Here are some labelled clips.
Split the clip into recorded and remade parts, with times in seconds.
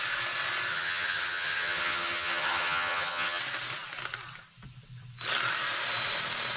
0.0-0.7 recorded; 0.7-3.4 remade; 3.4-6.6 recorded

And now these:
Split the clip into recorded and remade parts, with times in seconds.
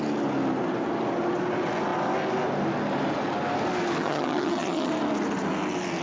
0.0-4.0 recorded; 4.0-4.9 remade; 4.9-6.0 recorded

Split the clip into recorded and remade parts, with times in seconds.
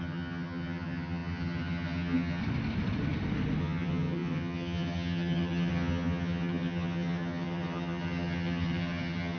0.0-2.4 remade; 2.4-3.6 recorded; 3.6-9.4 remade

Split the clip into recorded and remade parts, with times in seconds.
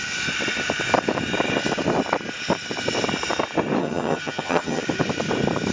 0.0-3.8 recorded; 3.8-4.8 remade; 4.8-5.7 recorded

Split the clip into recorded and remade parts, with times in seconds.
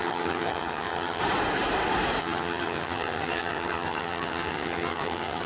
0.0-1.2 remade; 1.2-2.2 recorded; 2.2-5.5 remade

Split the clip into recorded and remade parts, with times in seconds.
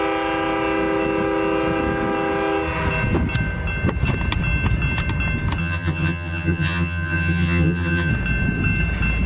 0.0-5.6 recorded; 5.6-8.1 remade; 8.1-9.3 recorded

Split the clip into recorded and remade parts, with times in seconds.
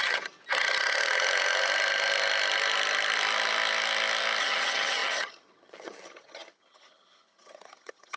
0.0-0.4 remade; 0.4-4.4 recorded; 4.4-8.2 remade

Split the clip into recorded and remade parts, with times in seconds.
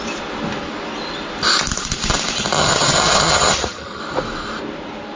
0.0-2.6 recorded; 2.6-4.0 remade; 4.0-5.2 recorded